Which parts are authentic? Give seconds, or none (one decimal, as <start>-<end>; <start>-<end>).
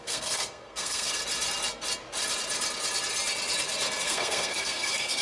1.2-4.0